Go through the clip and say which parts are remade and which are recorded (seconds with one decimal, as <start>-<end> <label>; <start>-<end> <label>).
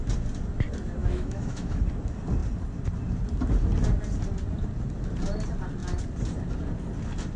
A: 0.0-1.0 recorded; 1.0-1.8 remade; 1.8-7.4 recorded